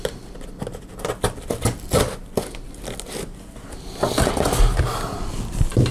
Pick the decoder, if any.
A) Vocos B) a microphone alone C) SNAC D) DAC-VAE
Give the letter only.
B